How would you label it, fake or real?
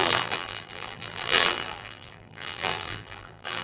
fake